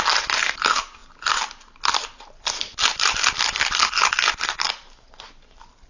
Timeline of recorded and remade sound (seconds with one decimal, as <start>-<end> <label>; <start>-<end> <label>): 0.0-5.9 recorded